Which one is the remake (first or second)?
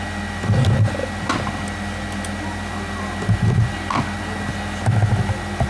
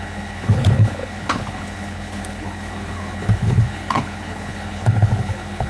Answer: second